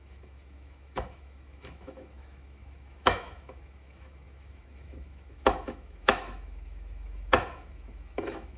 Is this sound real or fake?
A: fake